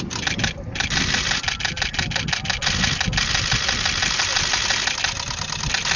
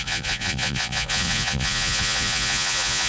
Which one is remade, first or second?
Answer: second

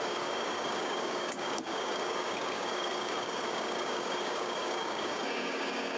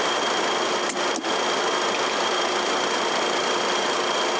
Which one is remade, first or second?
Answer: first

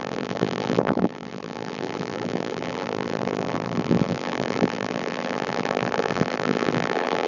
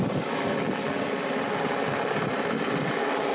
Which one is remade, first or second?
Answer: first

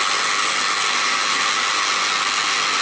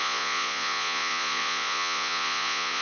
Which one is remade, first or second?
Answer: second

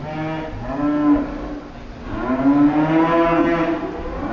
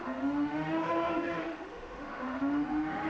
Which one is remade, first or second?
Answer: second